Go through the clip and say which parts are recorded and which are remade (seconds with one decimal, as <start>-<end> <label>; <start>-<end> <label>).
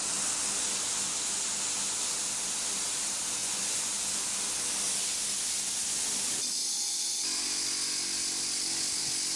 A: 0.0-3.4 recorded; 3.4-3.9 remade; 3.9-9.4 recorded